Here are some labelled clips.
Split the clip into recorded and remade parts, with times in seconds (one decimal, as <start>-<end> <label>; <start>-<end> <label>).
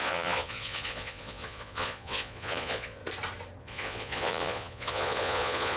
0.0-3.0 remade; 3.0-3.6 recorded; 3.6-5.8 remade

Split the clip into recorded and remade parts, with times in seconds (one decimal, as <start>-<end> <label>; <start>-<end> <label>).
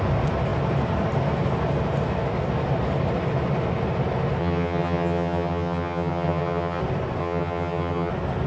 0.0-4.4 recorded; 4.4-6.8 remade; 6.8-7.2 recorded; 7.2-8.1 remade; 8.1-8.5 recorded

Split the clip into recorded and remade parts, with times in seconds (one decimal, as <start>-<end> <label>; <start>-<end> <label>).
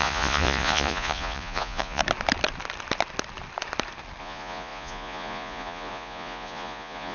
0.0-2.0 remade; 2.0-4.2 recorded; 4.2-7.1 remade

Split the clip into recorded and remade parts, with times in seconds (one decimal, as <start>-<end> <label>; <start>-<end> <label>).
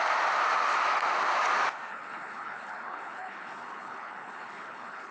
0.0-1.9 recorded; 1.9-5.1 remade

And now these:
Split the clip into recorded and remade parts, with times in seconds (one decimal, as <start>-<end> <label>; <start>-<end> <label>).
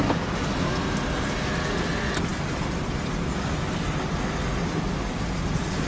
0.0-5.9 recorded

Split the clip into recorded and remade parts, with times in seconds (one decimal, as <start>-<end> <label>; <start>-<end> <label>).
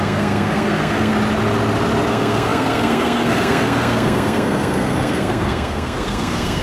0.0-1.1 remade; 1.1-2.1 recorded; 2.1-6.6 remade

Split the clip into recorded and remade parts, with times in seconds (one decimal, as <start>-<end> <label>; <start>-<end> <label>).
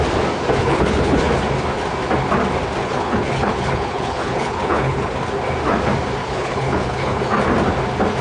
0.0-0.6 recorded; 0.6-1.3 remade; 1.3-2.8 recorded; 2.8-5.1 remade; 5.1-6.2 recorded; 6.2-7.2 remade; 7.2-8.2 recorded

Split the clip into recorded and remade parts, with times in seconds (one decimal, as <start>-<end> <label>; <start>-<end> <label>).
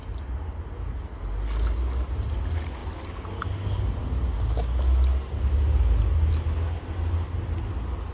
0.0-8.1 recorded